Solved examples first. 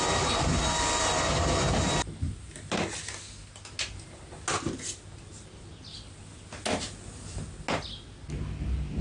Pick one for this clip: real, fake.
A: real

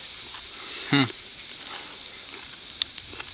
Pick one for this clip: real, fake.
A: real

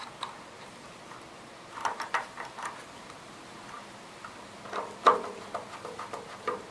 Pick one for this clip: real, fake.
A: real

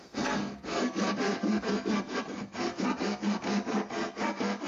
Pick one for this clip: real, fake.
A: fake